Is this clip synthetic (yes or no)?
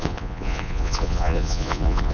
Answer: yes